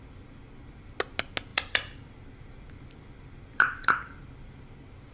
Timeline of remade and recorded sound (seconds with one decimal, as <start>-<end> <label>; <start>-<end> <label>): 0.0-1.5 recorded; 1.5-4.6 remade; 4.6-5.1 recorded